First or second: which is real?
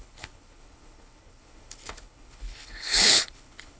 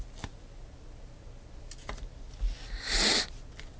second